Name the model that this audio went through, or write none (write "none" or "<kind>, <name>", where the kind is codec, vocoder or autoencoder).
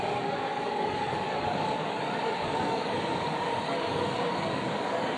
codec, DAC